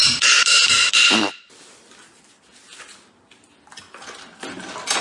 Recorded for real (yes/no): yes